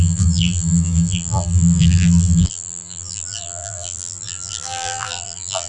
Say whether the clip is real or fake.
fake